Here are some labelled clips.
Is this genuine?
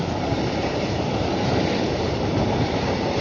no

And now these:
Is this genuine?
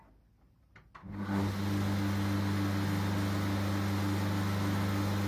yes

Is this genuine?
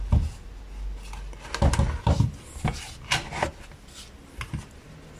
yes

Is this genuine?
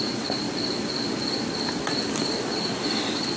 yes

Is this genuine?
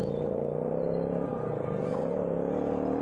yes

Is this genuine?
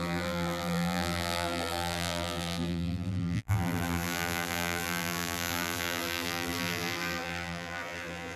no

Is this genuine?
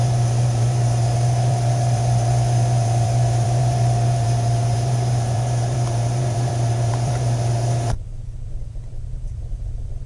no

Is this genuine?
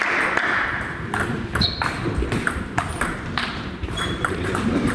no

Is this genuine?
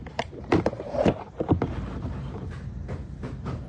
no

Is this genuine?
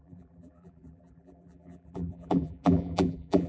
no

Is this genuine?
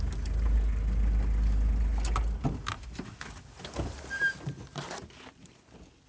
yes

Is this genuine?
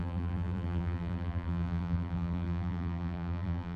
no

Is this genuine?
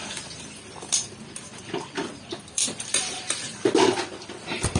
no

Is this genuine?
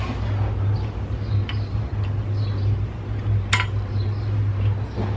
yes